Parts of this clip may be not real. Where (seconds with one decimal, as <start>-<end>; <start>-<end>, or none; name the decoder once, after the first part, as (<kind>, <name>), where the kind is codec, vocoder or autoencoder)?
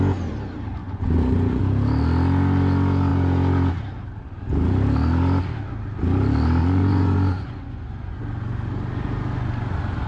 0.8-1.6 (vocoder, Vocos); 6.6-8.2